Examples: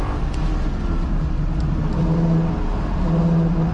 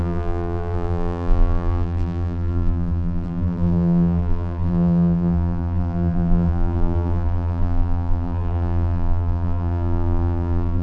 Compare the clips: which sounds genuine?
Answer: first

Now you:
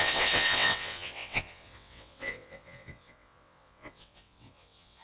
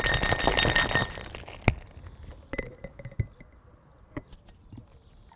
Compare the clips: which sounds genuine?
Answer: second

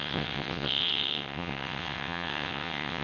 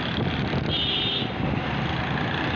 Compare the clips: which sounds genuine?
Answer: second